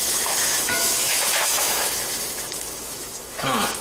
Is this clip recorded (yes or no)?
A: no